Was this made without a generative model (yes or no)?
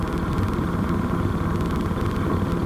yes